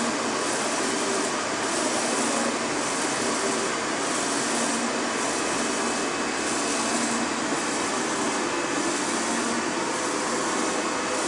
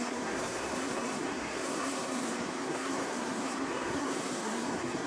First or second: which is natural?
first